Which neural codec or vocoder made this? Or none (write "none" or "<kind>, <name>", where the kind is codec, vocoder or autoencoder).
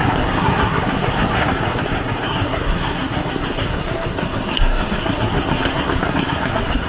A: codec, SNAC